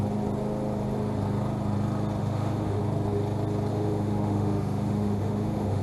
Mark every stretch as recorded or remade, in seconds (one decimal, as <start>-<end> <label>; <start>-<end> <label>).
0.0-2.2 recorded; 2.2-2.8 remade; 2.8-3.7 recorded; 3.7-5.8 remade